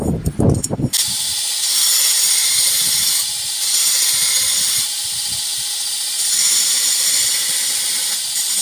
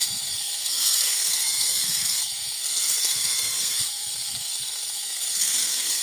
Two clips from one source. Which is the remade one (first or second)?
second